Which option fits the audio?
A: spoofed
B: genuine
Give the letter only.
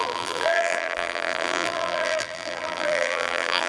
A